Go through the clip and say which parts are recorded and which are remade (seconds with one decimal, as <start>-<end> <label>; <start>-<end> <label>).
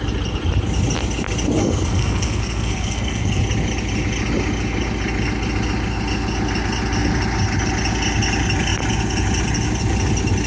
0.0-1.6 recorded; 1.6-3.4 remade; 3.4-10.5 recorded